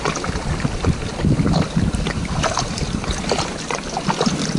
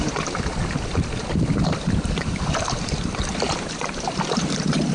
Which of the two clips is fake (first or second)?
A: second